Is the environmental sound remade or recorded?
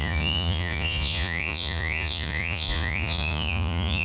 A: remade